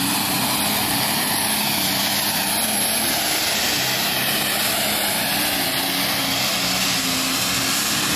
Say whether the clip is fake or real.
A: real